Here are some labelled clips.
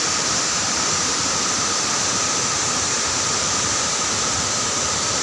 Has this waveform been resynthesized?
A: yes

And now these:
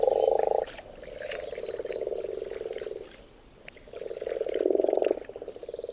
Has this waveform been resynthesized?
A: no